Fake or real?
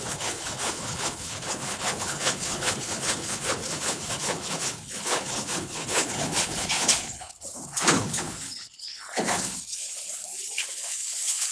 fake